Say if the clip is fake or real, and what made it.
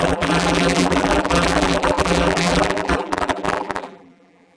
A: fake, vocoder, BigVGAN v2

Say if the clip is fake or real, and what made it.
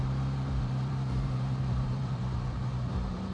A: fake, vocoder, BigVGAN v2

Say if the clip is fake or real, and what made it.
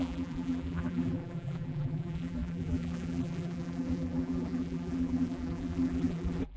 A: fake, vocoder, BigVGAN v2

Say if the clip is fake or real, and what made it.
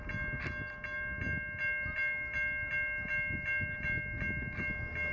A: real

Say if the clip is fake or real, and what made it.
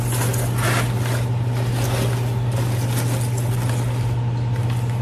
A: real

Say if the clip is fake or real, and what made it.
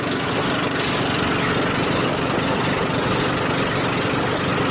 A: real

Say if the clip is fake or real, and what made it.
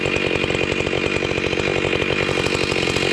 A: real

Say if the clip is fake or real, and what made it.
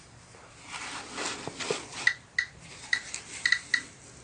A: real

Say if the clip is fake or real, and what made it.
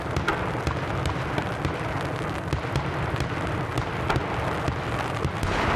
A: real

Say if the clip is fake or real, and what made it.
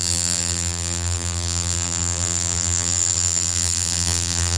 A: fake, vocoder, BigVGAN v2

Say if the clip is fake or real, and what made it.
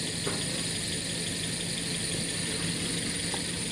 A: real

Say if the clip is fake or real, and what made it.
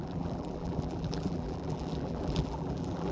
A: fake, vocoder, BigVGAN v2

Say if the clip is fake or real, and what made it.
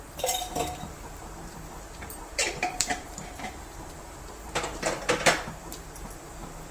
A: fake, vocoder, BigVGAN v2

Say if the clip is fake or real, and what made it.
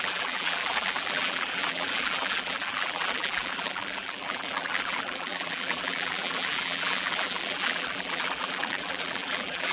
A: fake, vocoder, BigVGAN v2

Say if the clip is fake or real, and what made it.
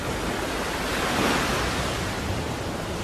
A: real